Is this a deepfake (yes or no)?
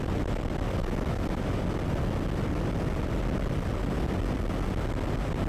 no